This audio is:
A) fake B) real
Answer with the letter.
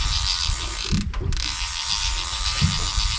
A